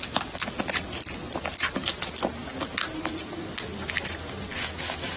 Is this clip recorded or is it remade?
recorded